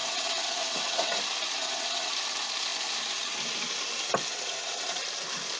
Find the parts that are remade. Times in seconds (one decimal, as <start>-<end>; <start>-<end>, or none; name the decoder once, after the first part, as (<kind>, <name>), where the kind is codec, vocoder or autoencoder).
0.0-1.2 (vocoder, WaveNeXt); 1.6-2.1; 4.3-5.0